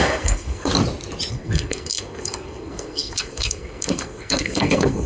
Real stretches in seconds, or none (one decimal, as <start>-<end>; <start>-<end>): 0.7-1.3